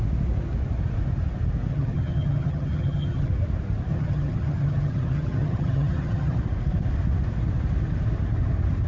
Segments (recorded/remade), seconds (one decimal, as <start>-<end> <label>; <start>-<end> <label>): 0.0-1.7 recorded; 1.7-3.3 remade; 3.3-3.9 recorded; 3.9-6.4 remade; 6.4-8.9 recorded